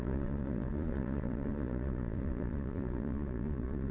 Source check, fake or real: fake